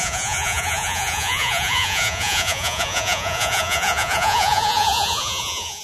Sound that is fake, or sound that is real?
fake